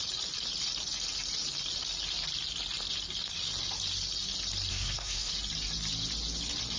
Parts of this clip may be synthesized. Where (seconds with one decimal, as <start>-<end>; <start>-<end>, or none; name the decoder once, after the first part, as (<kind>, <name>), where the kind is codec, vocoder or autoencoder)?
4.7-5.3 (codec, SNAC)